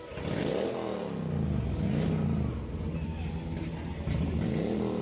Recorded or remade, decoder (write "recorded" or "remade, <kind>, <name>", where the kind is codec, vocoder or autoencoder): recorded